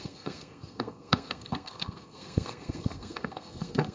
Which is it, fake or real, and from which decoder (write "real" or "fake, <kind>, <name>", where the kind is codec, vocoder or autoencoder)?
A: fake, codec, SNAC